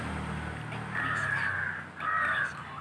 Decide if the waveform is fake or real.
real